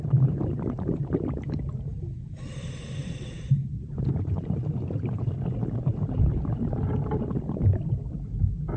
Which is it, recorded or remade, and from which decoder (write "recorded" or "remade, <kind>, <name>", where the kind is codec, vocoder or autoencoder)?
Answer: recorded